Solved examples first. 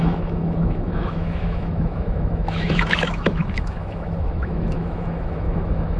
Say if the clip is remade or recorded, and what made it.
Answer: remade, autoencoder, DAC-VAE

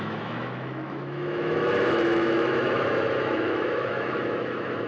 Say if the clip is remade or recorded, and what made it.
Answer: remade, autoencoder, DAC-VAE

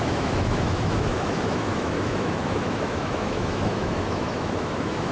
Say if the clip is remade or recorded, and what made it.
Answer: remade, autoencoder, DAC-VAE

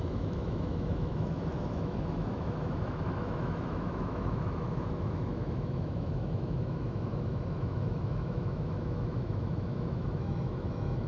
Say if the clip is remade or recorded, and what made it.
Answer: remade, autoencoder, DAC-VAE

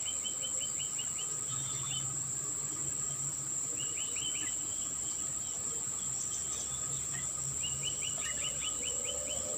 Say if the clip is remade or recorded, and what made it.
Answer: recorded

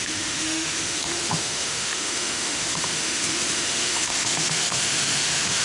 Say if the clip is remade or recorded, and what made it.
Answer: remade, autoencoder, DAC-VAE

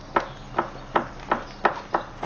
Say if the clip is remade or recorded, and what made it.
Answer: recorded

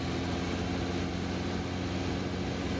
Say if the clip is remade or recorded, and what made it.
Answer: recorded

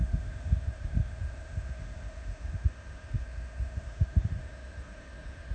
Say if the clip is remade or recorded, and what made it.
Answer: remade, autoencoder, DAC-VAE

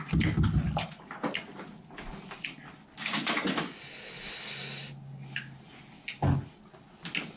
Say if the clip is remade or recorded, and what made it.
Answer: recorded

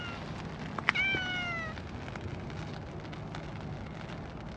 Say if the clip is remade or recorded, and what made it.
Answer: recorded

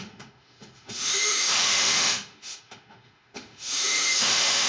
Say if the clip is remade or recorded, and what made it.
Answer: remade, autoencoder, DAC-VAE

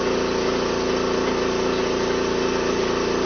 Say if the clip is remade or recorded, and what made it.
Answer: recorded